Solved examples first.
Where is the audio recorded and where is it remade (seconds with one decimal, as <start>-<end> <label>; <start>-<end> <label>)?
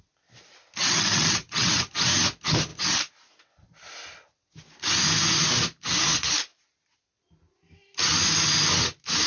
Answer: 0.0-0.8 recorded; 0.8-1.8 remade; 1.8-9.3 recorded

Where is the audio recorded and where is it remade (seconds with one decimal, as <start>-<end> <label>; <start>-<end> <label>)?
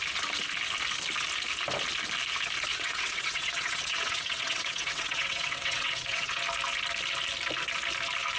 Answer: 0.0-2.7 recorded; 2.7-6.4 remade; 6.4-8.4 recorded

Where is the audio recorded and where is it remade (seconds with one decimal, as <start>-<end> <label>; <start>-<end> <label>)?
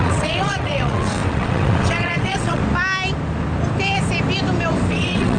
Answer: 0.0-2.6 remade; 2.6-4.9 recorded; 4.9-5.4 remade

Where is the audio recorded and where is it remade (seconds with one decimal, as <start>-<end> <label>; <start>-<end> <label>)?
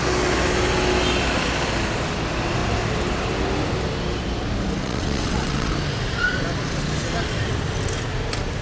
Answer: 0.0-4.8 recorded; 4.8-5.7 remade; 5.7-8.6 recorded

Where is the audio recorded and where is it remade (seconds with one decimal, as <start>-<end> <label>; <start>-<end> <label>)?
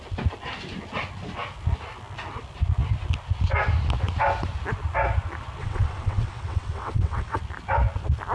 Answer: 0.0-5.6 recorded; 5.6-7.4 remade; 7.4-8.3 recorded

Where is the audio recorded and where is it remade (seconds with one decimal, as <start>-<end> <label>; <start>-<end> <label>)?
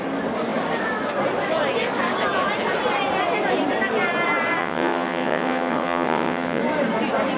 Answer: 0.0-4.6 recorded; 4.6-6.6 remade; 6.6-7.4 recorded